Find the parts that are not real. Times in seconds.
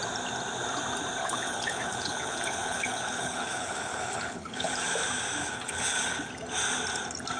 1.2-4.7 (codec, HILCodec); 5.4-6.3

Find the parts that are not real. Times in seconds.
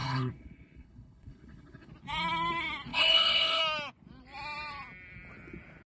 0.0-1.9 (codec, HILCodec); 2.9-3.6